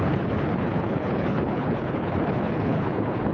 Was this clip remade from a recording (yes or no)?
yes